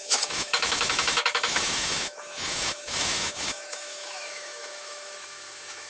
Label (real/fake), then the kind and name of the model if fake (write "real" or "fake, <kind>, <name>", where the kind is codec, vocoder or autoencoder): fake, autoencoder, DAC-VAE